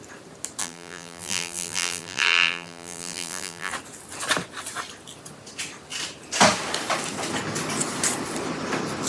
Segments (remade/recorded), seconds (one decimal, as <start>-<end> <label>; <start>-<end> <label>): 0.0-0.6 recorded; 0.6-3.7 remade; 3.7-9.1 recorded